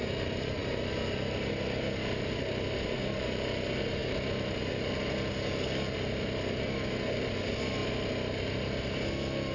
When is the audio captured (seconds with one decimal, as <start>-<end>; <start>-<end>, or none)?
0.0-9.5